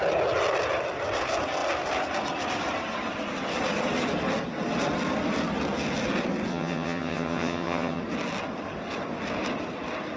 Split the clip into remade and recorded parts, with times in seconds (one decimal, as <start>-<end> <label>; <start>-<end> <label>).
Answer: 0.0-6.5 recorded; 6.5-8.0 remade; 8.0-10.2 recorded